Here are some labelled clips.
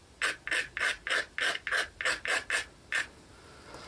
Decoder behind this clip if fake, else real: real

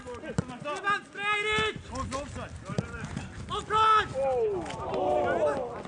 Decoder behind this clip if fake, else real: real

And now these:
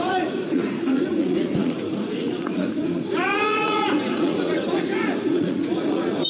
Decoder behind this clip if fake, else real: fake, vocoder, Vocos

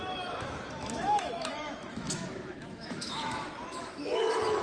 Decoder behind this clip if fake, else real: fake, autoencoder, DAC-VAE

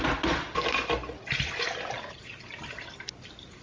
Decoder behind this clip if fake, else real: real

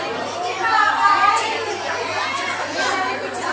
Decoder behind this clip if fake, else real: real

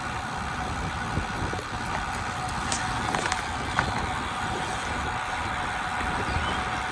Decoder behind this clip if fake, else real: real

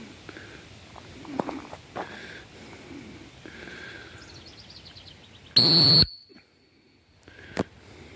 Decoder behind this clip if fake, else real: real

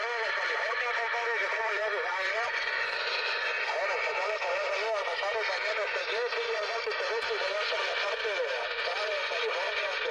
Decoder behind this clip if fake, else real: fake, vocoder, Vocos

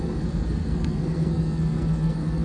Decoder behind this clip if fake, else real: fake, codec, SNAC